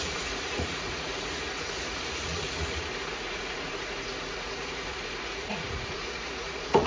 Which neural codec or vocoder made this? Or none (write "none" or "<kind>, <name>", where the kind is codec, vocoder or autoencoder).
vocoder, Vocos